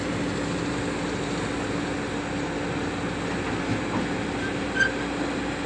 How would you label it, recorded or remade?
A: recorded